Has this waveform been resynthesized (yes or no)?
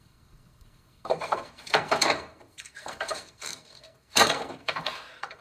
yes